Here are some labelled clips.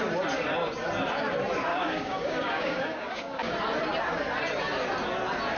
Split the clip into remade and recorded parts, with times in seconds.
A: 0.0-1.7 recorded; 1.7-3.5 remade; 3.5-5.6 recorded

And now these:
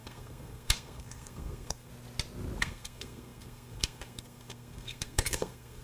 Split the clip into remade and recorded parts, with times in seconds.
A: 0.0-1.9 remade; 1.9-2.6 recorded; 2.6-5.8 remade

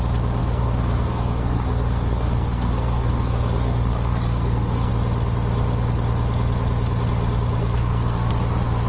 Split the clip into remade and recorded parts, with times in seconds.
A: 0.0-0.4 recorded; 0.4-4.9 remade; 4.9-7.6 recorded; 7.6-8.3 remade; 8.3-8.9 recorded

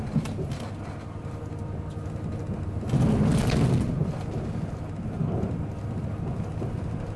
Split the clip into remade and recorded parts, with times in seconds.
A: 0.0-7.2 recorded